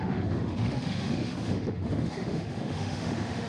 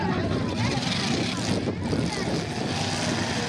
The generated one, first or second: first